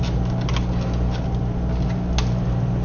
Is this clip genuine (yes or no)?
yes